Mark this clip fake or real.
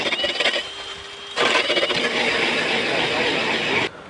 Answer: real